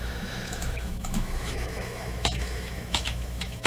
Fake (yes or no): yes